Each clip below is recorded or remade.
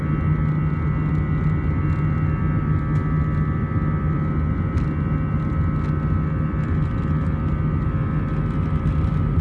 recorded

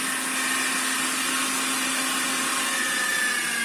recorded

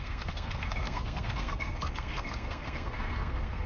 remade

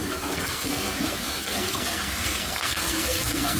remade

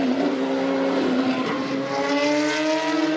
recorded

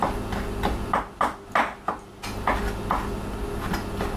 recorded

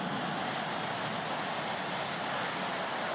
recorded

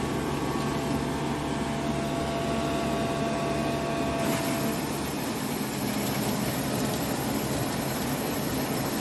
recorded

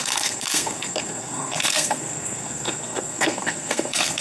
remade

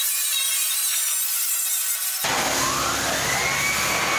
recorded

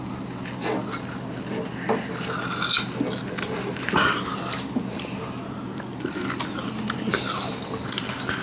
recorded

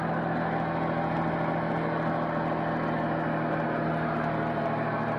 recorded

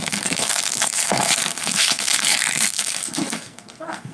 remade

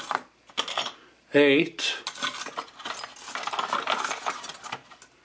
recorded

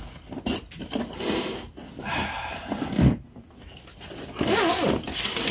recorded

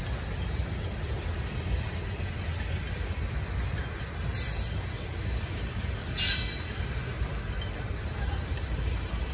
recorded